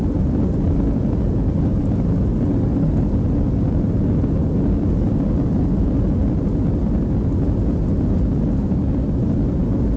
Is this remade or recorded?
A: recorded